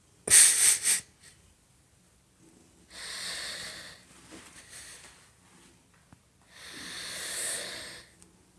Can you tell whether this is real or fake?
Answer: real